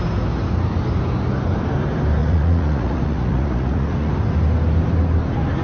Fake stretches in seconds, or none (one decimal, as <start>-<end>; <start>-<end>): 2.2-4.1